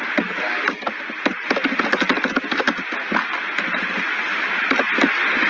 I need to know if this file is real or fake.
real